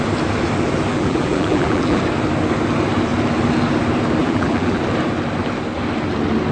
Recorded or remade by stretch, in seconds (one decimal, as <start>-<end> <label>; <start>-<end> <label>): 0.0-0.9 recorded; 0.9-2.0 remade; 2.0-4.2 recorded; 4.2-4.8 remade; 4.8-6.5 recorded